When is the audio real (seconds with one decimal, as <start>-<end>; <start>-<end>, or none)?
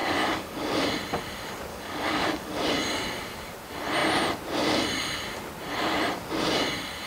0.8-1.7; 2.6-7.1